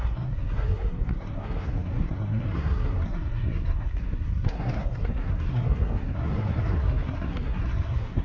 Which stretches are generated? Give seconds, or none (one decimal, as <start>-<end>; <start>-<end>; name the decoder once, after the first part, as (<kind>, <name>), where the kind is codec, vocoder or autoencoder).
0.0-8.2 (codec, SNAC)